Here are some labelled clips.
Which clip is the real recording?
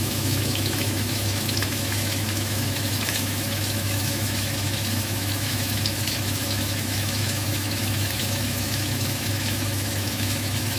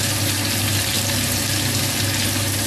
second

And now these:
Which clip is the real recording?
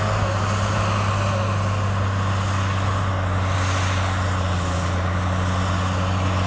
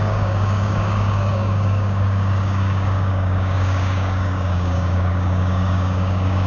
first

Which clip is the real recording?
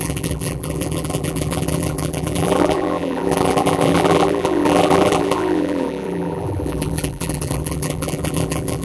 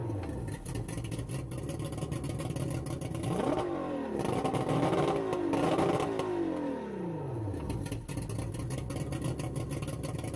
second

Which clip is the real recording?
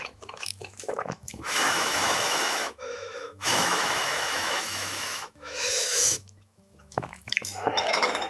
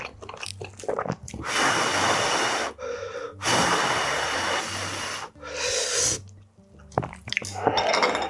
second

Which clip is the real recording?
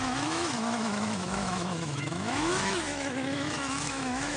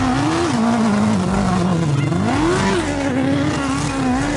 second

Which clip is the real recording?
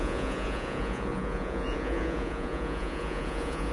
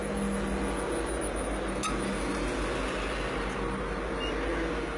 second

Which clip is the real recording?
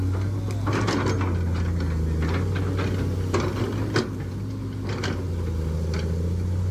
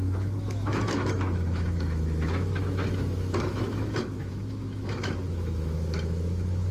first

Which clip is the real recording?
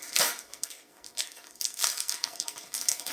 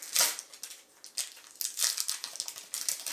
second